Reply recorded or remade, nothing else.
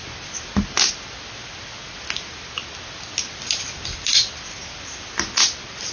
recorded